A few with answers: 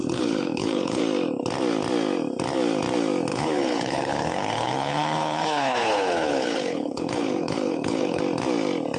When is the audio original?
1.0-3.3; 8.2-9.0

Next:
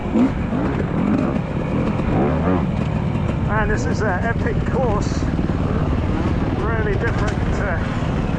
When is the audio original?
0.0-8.4